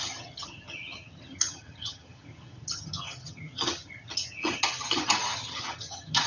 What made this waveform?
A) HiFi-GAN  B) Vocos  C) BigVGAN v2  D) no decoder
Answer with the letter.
A